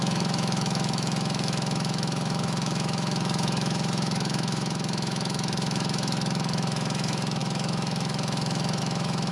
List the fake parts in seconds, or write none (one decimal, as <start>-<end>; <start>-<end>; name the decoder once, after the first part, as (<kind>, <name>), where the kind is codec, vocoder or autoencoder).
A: 0.0-9.3 (autoencoder, DAC-VAE)